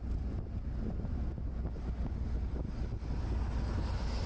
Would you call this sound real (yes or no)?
yes